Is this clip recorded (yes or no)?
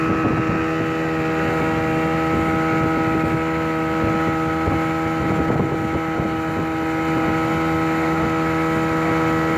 yes